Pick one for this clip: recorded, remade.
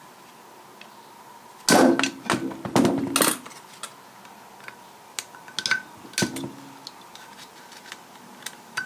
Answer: recorded